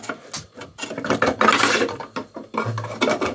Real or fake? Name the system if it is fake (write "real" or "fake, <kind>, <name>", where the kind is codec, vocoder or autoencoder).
real